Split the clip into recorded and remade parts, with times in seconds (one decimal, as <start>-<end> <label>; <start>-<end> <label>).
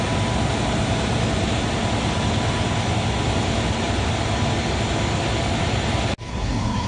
0.0-6.3 recorded; 6.3-6.9 remade